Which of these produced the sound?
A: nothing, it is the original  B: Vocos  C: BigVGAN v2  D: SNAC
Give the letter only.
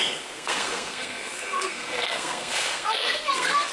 D